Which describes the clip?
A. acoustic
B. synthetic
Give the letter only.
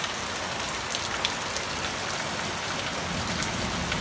A